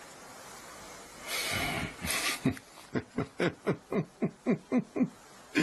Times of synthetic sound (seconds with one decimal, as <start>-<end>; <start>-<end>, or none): none